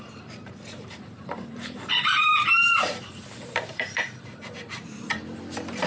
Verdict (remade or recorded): remade